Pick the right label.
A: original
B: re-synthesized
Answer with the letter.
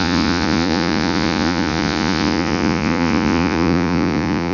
B